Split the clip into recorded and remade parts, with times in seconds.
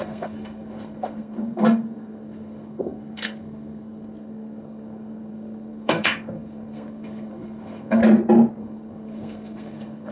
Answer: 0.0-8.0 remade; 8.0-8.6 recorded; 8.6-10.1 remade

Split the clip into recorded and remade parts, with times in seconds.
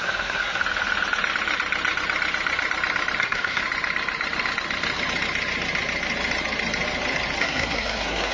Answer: 0.0-0.6 remade; 0.6-3.2 recorded; 3.2-3.6 remade; 3.6-7.4 recorded; 7.4-8.3 remade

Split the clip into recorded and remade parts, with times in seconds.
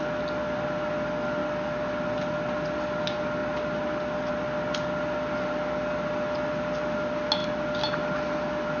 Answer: 0.0-8.8 recorded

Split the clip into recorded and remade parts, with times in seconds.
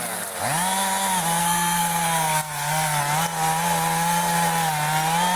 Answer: 0.0-1.4 recorded; 1.4-3.0 remade; 3.0-5.4 recorded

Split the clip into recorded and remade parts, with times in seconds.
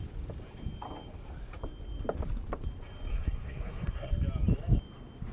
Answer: 0.0-3.1 recorded; 3.1-4.1 remade; 4.1-5.3 recorded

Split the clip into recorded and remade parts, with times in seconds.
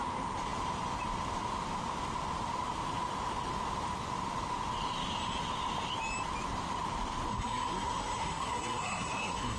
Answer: 0.0-7.3 recorded; 7.3-9.6 remade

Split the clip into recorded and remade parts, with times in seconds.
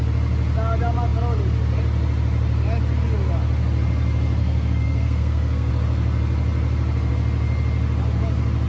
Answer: 0.0-4.4 recorded; 4.4-5.7 remade; 5.7-8.7 recorded